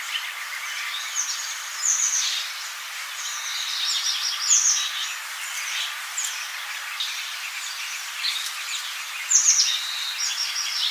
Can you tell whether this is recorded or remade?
remade